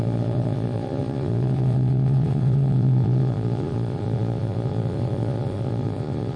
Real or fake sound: fake